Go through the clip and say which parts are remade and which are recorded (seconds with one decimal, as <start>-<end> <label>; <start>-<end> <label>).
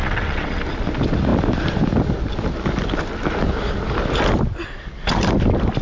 0.0-0.6 remade; 0.6-5.8 recorded